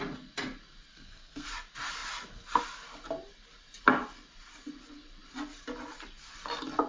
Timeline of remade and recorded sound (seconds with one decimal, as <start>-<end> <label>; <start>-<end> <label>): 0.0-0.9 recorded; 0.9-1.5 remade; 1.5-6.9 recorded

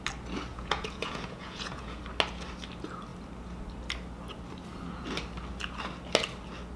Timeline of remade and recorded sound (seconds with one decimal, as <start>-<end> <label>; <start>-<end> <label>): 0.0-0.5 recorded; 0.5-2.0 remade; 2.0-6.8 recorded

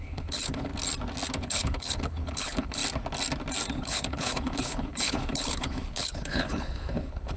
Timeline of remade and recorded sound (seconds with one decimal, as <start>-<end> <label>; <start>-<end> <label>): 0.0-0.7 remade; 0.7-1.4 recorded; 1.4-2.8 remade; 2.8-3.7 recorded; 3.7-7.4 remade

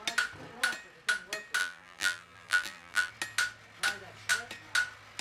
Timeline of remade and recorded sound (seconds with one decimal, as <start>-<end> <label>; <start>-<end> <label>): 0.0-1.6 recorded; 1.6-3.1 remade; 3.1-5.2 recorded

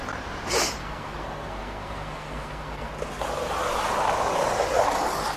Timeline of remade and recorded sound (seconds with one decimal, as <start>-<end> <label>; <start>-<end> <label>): 0.0-0.8 recorded; 0.8-2.9 remade; 2.9-5.4 recorded

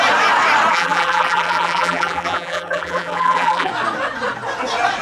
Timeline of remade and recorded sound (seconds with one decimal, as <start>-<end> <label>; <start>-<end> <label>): 0.0-0.7 recorded; 0.7-3.7 remade; 3.7-5.0 recorded